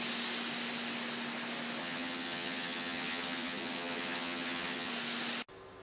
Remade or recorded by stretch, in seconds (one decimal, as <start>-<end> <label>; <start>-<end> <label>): 0.0-1.8 recorded; 1.8-4.9 remade; 4.9-5.8 recorded

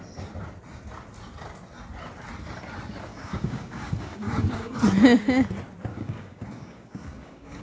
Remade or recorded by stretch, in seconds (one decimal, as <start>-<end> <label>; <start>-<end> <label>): 0.0-3.1 recorded; 3.1-4.8 remade; 4.8-5.9 recorded; 5.9-7.6 remade

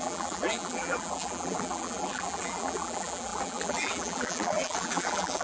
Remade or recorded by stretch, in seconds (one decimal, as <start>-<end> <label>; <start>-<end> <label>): 0.0-5.4 remade

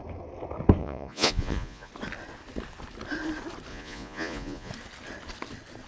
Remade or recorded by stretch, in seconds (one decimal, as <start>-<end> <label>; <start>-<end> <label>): 0.0-0.8 recorded; 0.8-1.9 remade; 1.9-3.7 recorded; 3.7-4.7 remade; 4.7-5.9 recorded

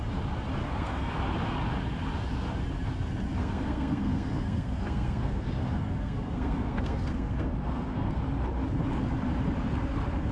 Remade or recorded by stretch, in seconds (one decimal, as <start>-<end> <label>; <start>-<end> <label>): 0.0-0.6 recorded; 0.6-1.1 remade; 1.1-3.4 recorded; 3.4-8.2 remade; 8.2-10.3 recorded

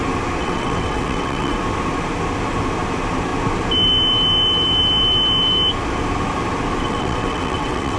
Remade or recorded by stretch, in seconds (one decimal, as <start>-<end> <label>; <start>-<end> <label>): 0.0-0.4 recorded; 0.4-1.6 remade; 1.6-6.8 recorded; 6.8-8.0 remade

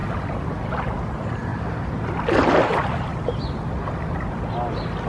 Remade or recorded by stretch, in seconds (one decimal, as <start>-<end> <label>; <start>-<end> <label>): 0.0-5.1 recorded